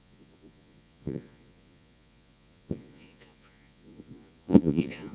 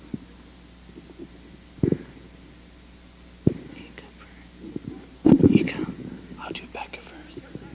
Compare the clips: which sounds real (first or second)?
second